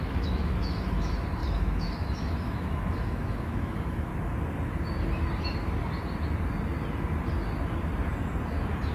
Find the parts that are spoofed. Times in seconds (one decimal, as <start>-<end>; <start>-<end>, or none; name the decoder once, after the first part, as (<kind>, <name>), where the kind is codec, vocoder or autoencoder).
0.0-4.1 (autoencoder, DAC-VAE)